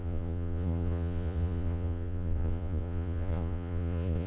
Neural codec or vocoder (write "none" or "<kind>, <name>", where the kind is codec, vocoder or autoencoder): vocoder, Vocos